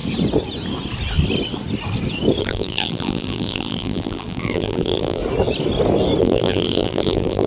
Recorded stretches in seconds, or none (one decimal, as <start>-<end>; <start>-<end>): 0.0-2.4; 5.2-6.2